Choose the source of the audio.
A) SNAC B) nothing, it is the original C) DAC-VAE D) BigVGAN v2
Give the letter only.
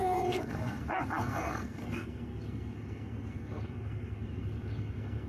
A